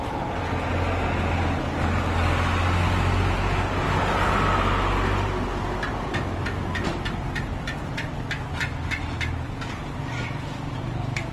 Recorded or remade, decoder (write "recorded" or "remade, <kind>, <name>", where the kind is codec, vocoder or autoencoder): recorded